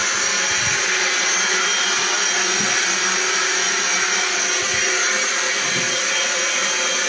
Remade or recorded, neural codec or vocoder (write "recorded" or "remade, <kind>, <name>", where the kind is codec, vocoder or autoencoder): recorded